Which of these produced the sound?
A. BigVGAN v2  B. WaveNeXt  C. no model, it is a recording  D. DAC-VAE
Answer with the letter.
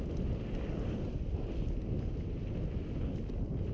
C